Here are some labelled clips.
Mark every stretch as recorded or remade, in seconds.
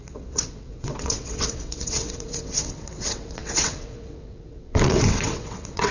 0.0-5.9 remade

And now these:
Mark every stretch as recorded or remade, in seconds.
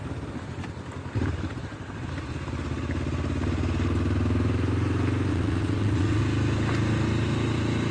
0.0-5.3 recorded; 5.3-6.2 remade; 6.2-7.9 recorded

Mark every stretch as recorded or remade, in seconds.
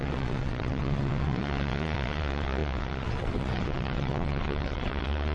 0.0-5.3 remade